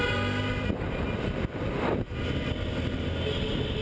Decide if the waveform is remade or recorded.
recorded